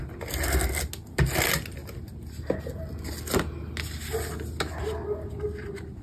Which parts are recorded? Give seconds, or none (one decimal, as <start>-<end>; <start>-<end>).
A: 0.0-6.0